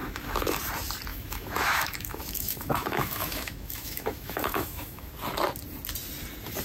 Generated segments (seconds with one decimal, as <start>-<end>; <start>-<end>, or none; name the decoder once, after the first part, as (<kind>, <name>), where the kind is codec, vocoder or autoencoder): 0.0-0.6 (autoencoder, DAC-VAE); 1.1-5.1